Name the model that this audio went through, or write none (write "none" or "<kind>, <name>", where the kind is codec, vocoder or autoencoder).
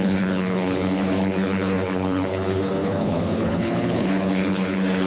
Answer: codec, HILCodec